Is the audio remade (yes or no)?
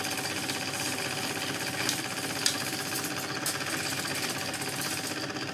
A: no